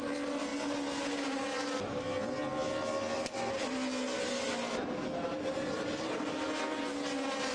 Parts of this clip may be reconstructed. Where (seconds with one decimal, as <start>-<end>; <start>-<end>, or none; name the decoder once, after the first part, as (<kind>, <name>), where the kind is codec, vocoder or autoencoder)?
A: none